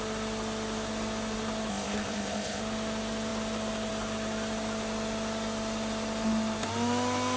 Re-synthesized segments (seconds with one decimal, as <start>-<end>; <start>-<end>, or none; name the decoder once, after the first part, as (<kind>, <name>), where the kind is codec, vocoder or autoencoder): 1.7-2.6 (codec, ZipCodec)